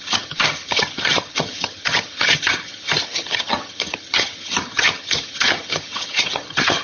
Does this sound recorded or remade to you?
remade